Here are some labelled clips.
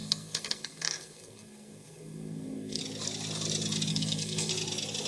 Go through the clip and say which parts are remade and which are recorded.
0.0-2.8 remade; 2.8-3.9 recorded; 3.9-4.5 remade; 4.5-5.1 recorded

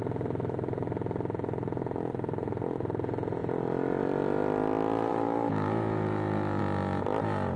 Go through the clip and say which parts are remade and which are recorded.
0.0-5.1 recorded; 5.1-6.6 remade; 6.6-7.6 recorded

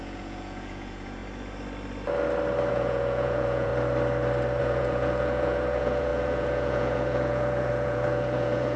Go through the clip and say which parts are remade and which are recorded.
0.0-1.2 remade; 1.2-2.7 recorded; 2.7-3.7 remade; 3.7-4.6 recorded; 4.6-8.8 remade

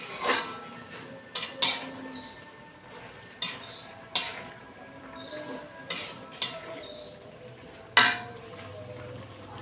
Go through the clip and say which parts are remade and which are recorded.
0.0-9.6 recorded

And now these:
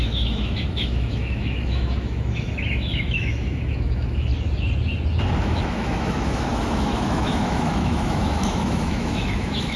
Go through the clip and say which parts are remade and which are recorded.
0.0-4.3 remade; 4.3-5.4 recorded; 5.4-9.8 remade